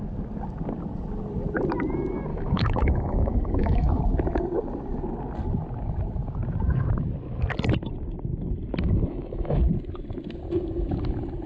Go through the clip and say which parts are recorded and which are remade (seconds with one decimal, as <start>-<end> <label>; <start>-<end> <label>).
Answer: 0.0-2.3 recorded; 2.3-4.0 remade; 4.0-9.1 recorded; 9.1-9.6 remade; 9.6-11.5 recorded